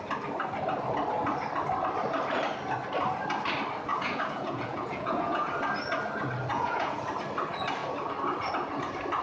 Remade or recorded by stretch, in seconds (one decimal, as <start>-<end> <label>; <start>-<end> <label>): 0.0-3.9 recorded; 3.9-5.5 remade; 5.5-6.5 recorded; 6.5-7.0 remade; 7.0-9.2 recorded